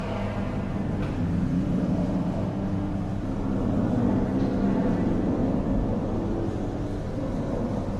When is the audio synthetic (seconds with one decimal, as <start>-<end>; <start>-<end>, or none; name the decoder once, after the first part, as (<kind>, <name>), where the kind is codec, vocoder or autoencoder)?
1.5-2.9 (autoencoder, DAC-VAE)